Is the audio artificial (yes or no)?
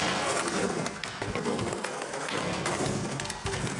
yes